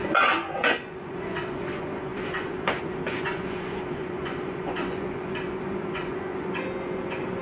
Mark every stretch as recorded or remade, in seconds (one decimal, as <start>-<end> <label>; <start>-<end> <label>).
0.0-7.4 remade